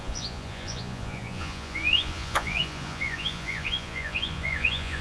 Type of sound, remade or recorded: remade